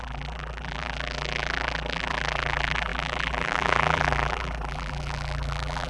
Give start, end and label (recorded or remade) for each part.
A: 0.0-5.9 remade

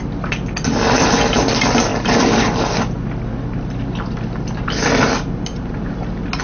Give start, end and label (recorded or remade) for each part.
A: 0.0-6.4 recorded

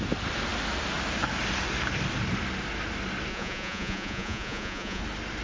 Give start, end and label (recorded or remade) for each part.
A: 0.0-3.3 recorded; 3.3-5.0 remade; 5.0-5.4 recorded

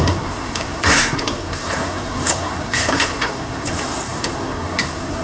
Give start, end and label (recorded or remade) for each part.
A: 0.0-5.2 remade

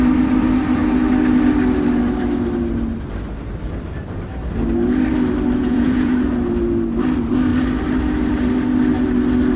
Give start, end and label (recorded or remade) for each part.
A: 0.0-5.6 recorded; 5.6-6.1 remade; 6.1-9.6 recorded

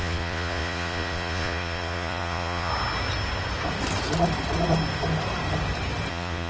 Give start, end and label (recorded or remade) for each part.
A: 0.0-2.7 remade; 2.7-6.1 recorded; 6.1-6.5 remade

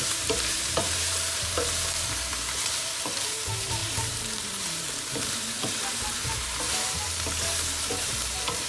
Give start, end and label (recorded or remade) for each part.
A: 0.0-8.7 remade

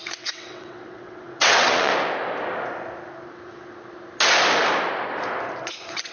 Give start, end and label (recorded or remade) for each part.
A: 0.0-1.9 remade; 1.9-5.6 recorded; 5.6-6.1 remade